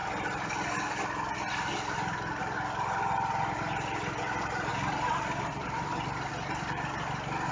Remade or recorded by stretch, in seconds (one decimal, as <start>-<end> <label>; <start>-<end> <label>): 0.0-4.7 recorded; 4.7-6.3 remade; 6.3-7.5 recorded